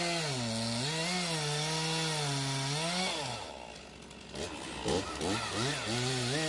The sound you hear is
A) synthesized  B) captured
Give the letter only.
B